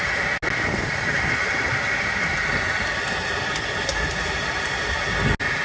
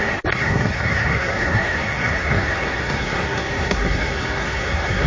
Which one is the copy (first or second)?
second